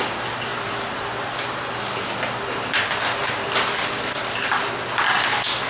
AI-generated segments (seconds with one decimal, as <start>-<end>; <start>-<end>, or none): 0.5-2.1; 3.2-4.5